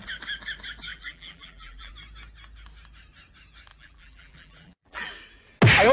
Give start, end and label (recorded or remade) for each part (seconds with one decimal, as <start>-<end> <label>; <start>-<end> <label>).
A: 0.0-0.9 recorded; 0.9-1.9 remade; 1.9-3.7 recorded; 3.7-5.1 remade; 5.1-5.9 recorded